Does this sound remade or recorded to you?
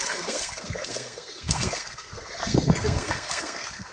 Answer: remade